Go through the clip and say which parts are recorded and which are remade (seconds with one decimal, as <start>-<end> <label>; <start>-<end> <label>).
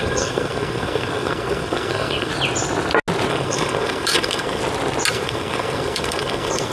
0.0-2.3 remade; 2.3-3.3 recorded; 3.3-4.6 remade; 4.6-5.1 recorded; 5.1-6.7 remade